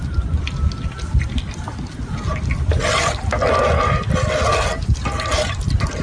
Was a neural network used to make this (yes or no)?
no